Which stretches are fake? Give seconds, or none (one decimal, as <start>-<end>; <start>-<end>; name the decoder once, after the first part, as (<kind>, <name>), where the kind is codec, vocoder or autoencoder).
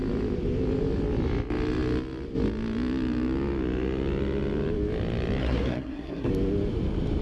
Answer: 5.4-6.3 (codec, SNAC)